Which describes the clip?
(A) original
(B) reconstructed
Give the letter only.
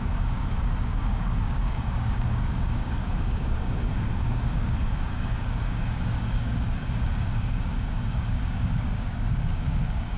B